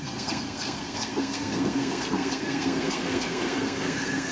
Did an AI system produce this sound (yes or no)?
yes